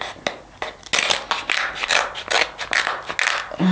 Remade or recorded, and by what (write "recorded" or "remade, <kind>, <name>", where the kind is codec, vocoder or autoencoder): recorded